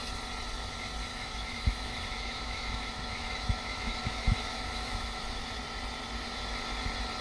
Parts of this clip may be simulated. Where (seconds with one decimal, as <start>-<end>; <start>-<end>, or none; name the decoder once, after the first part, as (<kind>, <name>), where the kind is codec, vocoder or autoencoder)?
1.1-5.4 (autoencoder, DAC-VAE)